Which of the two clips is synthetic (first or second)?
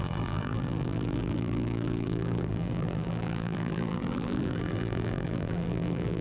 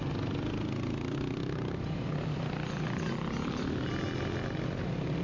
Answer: first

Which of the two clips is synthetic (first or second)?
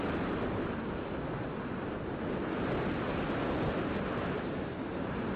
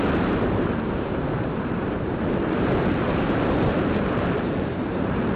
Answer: second